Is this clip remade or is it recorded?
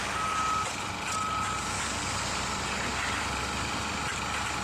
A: recorded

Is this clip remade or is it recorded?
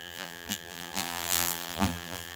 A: remade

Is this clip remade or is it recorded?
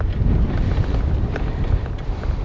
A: remade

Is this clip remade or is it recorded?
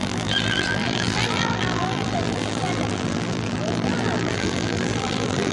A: remade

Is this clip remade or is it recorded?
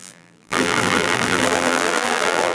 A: remade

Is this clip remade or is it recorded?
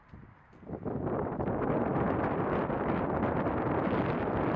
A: recorded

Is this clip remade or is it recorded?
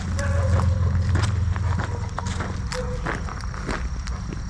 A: recorded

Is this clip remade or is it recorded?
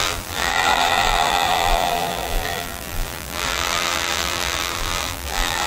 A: remade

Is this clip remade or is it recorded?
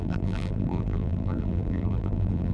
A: remade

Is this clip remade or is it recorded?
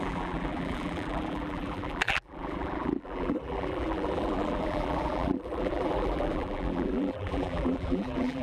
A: remade